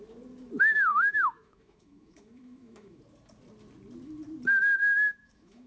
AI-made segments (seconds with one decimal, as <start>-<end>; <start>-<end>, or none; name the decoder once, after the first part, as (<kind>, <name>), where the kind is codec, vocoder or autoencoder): 0.9-3.0 (autoencoder, DAC-VAE); 4.8-5.7